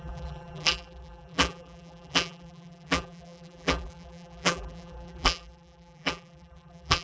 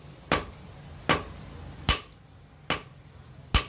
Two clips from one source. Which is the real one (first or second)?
second